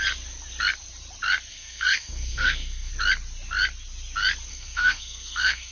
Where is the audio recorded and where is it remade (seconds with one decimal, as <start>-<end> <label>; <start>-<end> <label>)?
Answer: 0.0-1.5 recorded; 1.5-2.9 remade; 2.9-4.5 recorded; 4.5-5.7 remade